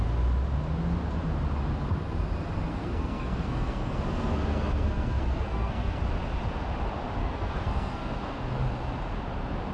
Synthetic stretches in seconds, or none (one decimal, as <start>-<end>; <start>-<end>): 2.7-4.0; 4.5-6.0; 7.2-8.6